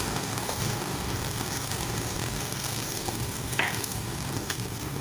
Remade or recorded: remade